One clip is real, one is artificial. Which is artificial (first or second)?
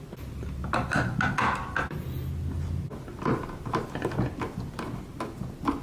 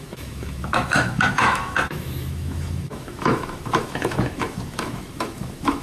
second